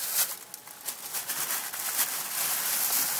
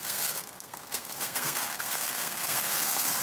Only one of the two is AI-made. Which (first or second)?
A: second